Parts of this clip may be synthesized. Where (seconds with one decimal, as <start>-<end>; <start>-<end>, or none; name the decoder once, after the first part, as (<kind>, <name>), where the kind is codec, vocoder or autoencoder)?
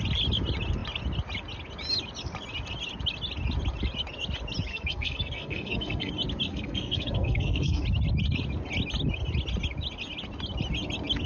4.7-6.1 (codec, SNAC); 6.5-7.8